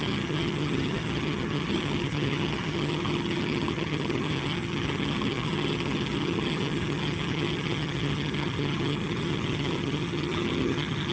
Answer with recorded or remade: remade